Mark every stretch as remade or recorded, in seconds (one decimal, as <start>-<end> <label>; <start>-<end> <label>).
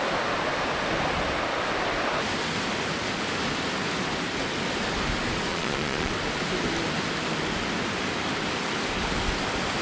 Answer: 0.0-5.5 recorded; 5.5-6.1 remade; 6.1-9.8 recorded